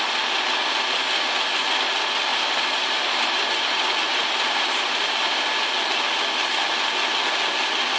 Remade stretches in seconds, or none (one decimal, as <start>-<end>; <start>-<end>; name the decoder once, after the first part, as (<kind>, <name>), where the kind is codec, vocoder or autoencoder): 2.3-5.6 (vocoder, BigVGAN v2)